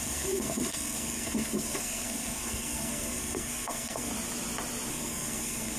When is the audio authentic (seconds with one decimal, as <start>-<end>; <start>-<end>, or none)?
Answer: 4.1-4.9